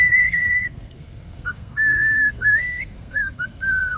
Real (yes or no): no